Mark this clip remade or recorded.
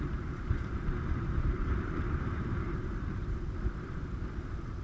remade